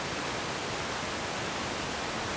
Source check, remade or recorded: recorded